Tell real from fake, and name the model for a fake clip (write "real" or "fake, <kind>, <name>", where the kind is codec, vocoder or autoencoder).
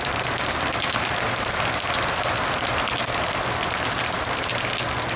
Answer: real